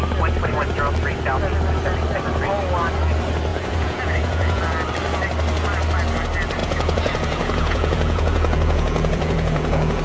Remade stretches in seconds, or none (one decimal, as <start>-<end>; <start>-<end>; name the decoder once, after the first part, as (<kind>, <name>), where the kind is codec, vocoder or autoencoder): 3.5-4.6 (vocoder, Vocos); 6.6-10.0